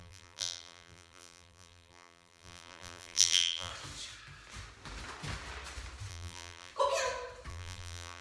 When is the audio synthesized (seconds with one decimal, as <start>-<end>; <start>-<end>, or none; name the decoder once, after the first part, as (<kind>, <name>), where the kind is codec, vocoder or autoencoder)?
0.0-3.7 (vocoder, BigVGAN v2); 6.1-6.7; 7.5-8.2